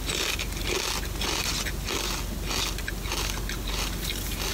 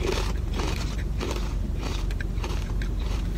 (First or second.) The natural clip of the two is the first